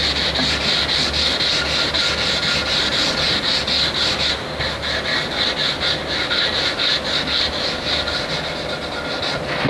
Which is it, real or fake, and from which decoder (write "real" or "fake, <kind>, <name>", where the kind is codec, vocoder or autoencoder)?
real